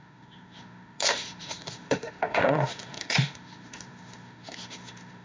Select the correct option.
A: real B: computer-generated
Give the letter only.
B